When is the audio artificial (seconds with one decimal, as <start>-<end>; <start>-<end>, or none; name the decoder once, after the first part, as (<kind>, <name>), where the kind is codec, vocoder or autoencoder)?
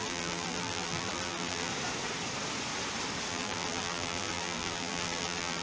0.0-1.7 (vocoder, BigVGAN v2); 3.3-5.6